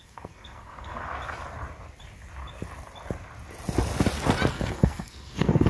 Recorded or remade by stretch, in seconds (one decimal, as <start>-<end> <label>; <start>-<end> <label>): 0.0-1.1 remade; 1.1-4.5 recorded; 4.5-5.7 remade